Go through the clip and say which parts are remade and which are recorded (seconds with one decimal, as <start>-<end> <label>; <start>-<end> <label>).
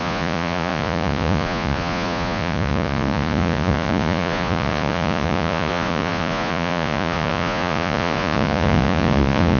0.0-9.6 remade